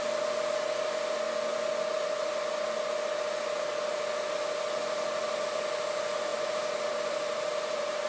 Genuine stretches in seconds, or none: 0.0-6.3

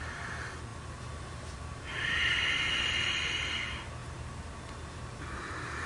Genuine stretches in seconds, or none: 0.0-5.9

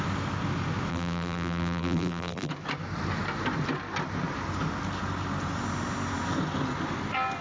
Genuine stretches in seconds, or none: 0.0-0.9; 2.5-7.4

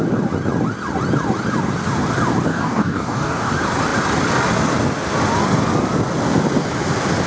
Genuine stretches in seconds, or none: 0.0-2.5; 3.5-7.3

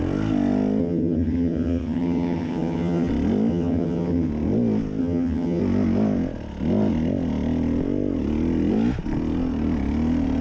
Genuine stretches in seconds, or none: 0.0-0.8; 3.1-3.5; 4.3-5.0; 5.6-10.4

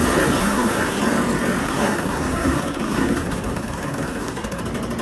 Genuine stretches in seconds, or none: 0.0-0.4; 1.0-1.6; 4.6-5.0

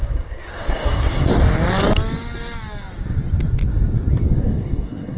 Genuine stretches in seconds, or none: 1.3-4.4

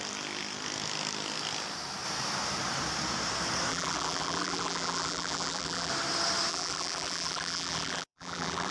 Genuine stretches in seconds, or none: 0.0-3.7; 5.9-6.5